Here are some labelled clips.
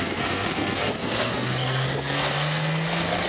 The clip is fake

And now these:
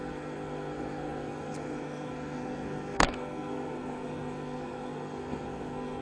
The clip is fake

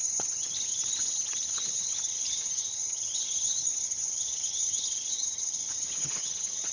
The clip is fake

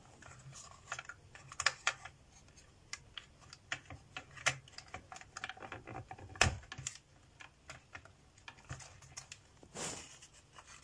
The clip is real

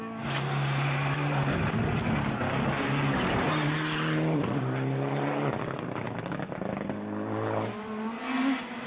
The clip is real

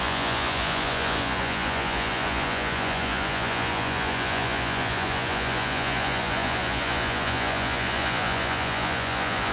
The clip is fake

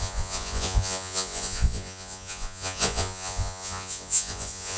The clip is fake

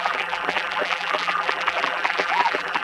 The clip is fake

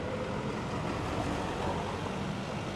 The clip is real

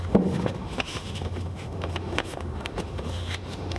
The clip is fake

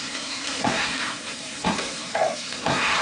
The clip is fake